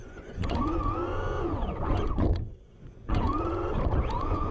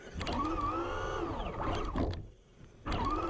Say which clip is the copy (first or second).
first